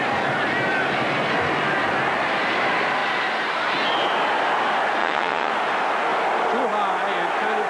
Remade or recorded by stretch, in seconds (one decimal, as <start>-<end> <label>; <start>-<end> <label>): 0.0-5.0 recorded; 5.0-5.5 remade; 5.5-7.7 recorded